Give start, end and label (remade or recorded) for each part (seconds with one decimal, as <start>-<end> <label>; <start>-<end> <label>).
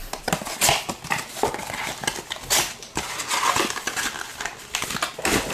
0.0-5.5 recorded